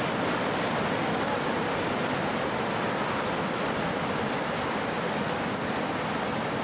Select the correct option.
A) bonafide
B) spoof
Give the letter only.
A